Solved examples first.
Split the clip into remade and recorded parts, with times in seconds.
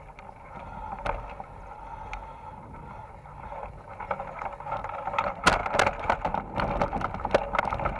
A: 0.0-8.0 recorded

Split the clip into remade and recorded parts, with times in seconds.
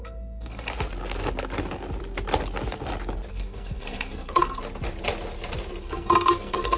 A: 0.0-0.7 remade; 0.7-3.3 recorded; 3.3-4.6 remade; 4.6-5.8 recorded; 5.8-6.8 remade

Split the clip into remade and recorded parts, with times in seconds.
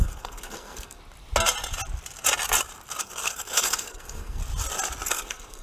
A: 0.0-1.0 remade; 1.0-3.0 recorded; 3.0-4.4 remade; 4.4-5.1 recorded; 5.1-5.6 remade